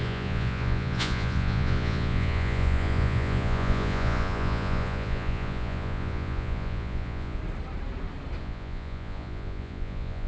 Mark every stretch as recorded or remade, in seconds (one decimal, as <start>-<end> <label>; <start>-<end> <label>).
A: 0.0-7.4 remade; 7.4-8.4 recorded; 8.4-10.3 remade